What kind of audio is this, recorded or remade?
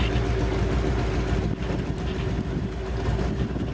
recorded